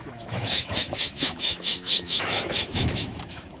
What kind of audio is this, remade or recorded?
remade